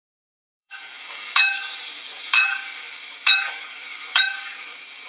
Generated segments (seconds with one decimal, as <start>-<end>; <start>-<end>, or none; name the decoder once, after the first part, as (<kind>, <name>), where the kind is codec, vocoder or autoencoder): 0.0-5.1 (codec, DAC)